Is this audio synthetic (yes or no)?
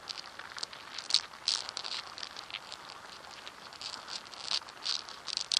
no